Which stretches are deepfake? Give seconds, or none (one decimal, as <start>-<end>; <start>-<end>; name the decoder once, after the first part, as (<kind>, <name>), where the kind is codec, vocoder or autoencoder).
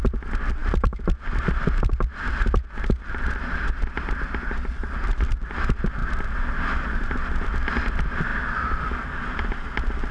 none